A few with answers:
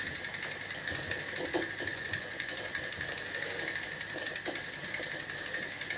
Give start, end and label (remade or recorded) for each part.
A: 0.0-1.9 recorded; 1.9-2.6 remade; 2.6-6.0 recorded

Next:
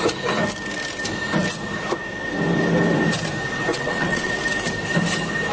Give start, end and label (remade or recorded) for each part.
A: 0.0-3.7 recorded; 3.7-4.3 remade; 4.3-5.5 recorded